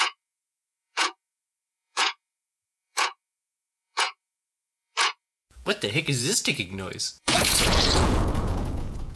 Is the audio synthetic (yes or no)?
yes